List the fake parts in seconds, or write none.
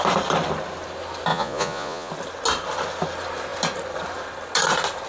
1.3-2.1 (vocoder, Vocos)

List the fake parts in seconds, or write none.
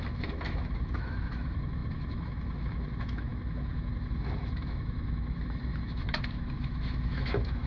0.0-7.7 (autoencoder, DAC-VAE)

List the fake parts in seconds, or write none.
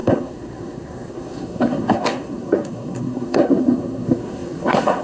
0.0-5.0 (codec, SNAC)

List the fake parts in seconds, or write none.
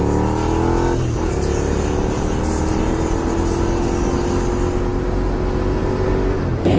none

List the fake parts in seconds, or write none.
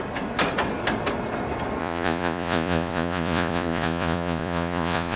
1.8-5.2 (vocoder, Vocos)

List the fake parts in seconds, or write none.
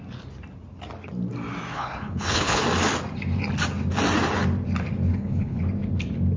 1.7-2.6 (codec, HILCodec); 5.1-5.6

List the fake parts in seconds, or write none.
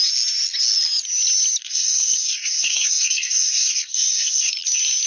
1.6-4.5 (codec, SNAC)